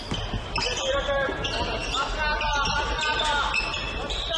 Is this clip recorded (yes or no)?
yes